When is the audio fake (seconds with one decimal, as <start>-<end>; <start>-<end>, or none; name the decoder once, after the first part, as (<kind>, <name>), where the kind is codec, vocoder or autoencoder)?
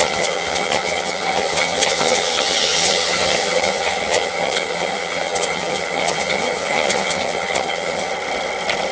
0.0-8.1 (vocoder, HiFi-GAN)